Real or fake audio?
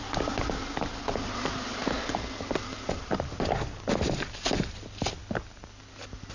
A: real